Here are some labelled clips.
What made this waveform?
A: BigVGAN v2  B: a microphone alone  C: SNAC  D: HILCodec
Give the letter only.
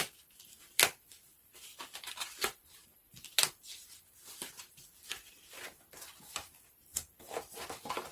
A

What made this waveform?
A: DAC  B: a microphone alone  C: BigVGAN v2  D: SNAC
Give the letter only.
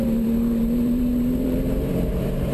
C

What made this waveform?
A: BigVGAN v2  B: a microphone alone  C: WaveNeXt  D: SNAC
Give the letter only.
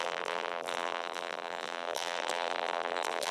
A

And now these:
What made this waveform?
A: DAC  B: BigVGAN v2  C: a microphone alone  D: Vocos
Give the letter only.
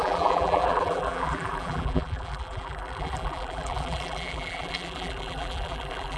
B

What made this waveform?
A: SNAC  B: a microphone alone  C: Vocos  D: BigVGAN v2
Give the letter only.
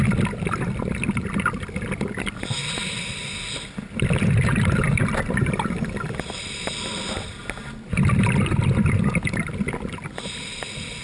B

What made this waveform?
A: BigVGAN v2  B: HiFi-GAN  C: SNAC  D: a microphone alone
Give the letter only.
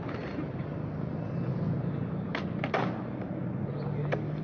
D